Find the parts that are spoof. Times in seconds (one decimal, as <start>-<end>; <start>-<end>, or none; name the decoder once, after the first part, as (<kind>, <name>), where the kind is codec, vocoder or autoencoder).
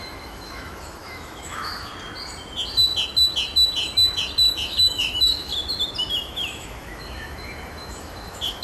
0.0-1.9 (autoencoder, DAC-VAE); 4.5-5.5; 6.1-8.6